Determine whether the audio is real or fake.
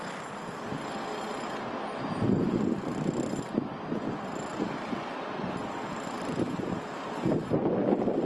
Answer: real